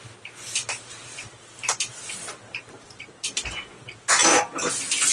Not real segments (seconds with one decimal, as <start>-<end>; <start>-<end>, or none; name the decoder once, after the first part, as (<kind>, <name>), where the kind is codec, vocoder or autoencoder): 1.1-3.6 (vocoder, BigVGAN v2)